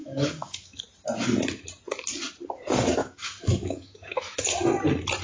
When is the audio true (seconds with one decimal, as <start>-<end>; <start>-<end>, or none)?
0.8-3.0; 4.4-5.2

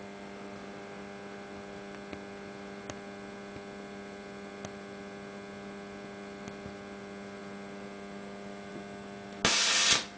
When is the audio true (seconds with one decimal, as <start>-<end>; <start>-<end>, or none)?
0.0-10.2

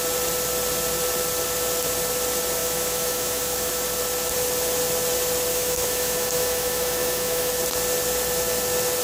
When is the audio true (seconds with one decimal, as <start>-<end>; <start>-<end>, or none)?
0.0-2.6; 3.7-5.5; 7.5-9.0

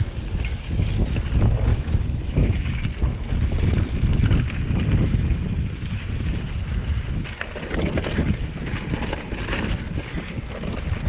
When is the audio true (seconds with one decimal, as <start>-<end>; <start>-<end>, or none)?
0.0-1.7; 2.7-11.1

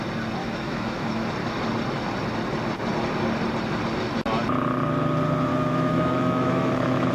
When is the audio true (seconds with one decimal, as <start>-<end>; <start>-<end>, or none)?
0.0-0.4; 1.3-5.5

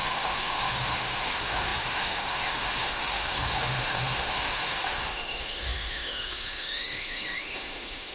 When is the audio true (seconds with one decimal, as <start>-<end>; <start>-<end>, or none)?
none

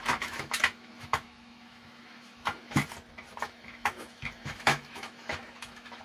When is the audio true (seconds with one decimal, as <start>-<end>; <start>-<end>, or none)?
2.8-3.4

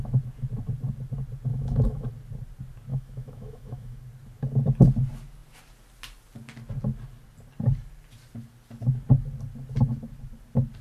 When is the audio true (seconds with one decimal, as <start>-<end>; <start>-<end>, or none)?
0.0-1.5; 2.1-2.9; 4.0-10.8